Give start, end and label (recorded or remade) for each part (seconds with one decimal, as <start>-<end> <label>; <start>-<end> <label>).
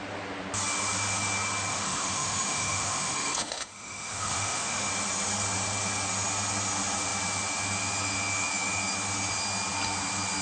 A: 0.0-1.7 recorded; 1.7-4.9 remade; 4.9-10.4 recorded